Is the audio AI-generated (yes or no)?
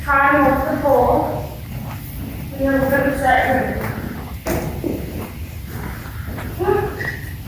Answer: no